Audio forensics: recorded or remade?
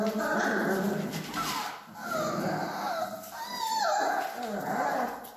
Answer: recorded